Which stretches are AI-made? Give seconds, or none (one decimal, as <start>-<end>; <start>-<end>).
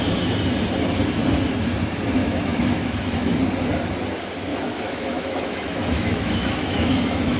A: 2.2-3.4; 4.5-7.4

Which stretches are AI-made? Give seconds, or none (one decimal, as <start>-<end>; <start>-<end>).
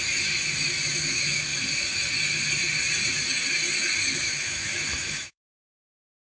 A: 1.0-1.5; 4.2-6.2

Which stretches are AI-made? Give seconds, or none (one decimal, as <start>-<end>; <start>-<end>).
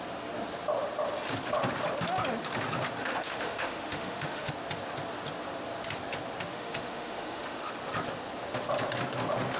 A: 3.0-4.5; 6.5-7.7